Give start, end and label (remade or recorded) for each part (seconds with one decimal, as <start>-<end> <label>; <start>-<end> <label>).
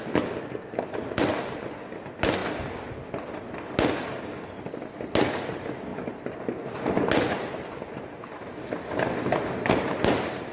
0.0-10.5 recorded